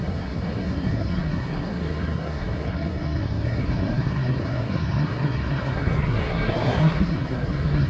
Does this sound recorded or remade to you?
remade